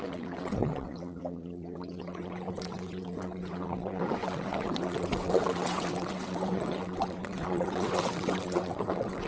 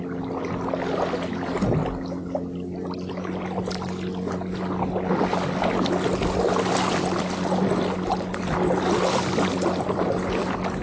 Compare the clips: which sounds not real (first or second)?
first